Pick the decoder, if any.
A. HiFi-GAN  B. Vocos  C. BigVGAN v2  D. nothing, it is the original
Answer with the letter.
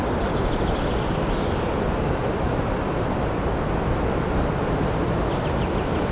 D